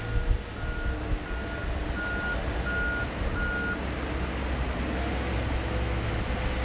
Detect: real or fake real